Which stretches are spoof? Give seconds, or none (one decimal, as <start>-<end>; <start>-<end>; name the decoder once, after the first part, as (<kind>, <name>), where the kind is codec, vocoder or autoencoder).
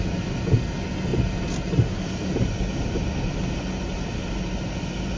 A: none